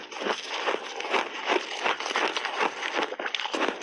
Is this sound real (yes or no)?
yes